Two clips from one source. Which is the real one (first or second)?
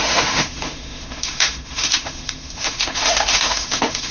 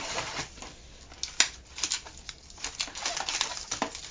second